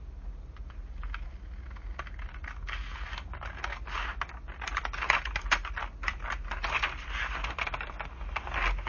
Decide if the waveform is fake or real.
real